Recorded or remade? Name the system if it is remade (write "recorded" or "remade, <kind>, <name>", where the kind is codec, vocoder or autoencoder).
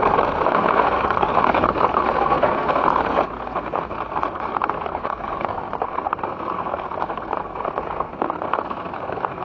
remade, codec, SNAC